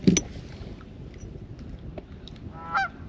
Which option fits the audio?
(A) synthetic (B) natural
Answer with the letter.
B